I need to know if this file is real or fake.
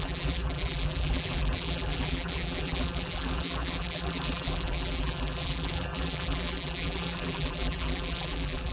fake